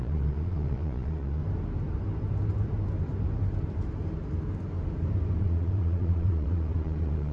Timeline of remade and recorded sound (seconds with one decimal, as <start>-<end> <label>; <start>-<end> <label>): 0.0-1.4 remade; 1.4-5.4 recorded; 5.4-7.3 remade